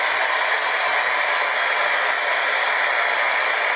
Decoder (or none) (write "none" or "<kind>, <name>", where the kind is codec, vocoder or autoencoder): none